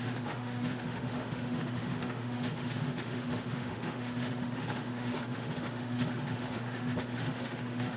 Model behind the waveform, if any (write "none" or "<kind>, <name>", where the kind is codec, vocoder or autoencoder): autoencoder, DAC-VAE